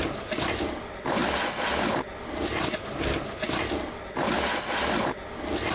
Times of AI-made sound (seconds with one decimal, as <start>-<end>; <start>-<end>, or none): none